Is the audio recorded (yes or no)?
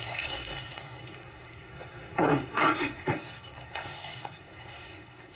no